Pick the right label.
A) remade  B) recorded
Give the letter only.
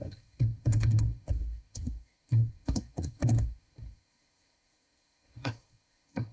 A